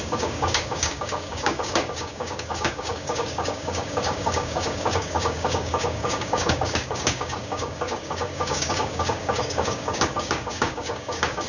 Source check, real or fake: fake